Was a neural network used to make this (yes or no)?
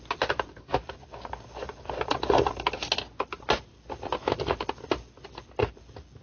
no